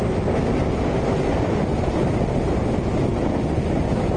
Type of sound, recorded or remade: recorded